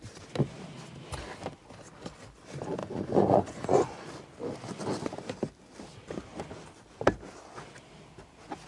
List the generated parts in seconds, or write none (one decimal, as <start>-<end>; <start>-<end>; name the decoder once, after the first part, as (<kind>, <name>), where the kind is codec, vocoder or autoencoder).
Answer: 2.8-4.1 (vocoder, Vocos)